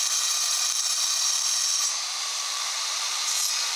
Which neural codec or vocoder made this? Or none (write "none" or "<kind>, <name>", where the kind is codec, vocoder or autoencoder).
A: vocoder, BigVGAN v2